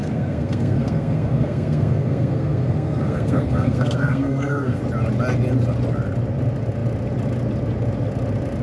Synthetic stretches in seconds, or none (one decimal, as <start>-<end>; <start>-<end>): 0.0-4.8